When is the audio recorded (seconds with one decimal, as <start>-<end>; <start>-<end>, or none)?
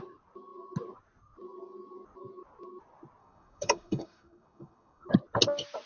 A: 0.0-3.2; 5.1-5.9